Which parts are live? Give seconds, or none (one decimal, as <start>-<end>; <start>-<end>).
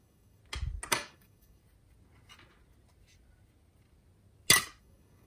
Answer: 0.4-0.9; 1.6-4.8